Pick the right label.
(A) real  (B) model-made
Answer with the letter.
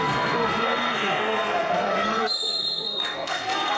B